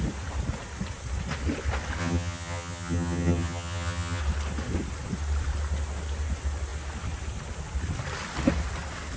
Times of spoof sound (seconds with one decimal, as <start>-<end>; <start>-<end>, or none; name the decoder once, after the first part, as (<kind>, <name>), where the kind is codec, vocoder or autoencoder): 2.0-4.2 (vocoder, HiFi-GAN)